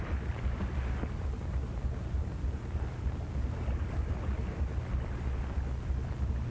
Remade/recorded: recorded